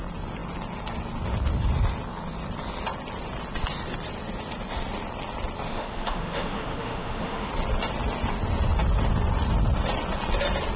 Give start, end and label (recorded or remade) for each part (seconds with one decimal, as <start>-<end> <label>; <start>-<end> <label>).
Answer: 0.0-5.7 recorded; 5.7-7.5 remade; 7.5-10.8 recorded